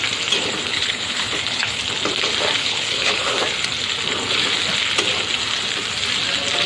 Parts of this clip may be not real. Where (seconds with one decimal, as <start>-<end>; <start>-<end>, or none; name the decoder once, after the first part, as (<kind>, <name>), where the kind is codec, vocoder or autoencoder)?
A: 0.7-1.8 (codec, HILCodec); 2.6-3.4